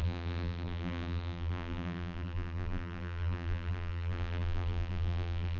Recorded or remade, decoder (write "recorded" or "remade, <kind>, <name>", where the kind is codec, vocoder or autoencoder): remade, vocoder, BigVGAN v2